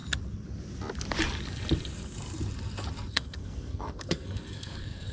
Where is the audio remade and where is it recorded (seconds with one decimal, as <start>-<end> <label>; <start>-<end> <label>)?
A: 0.0-3.1 recorded; 3.1-5.1 remade